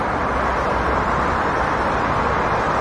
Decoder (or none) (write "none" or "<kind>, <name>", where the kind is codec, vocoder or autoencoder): none